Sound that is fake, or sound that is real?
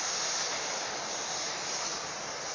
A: real